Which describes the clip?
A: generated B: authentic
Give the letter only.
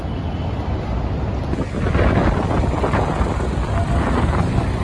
B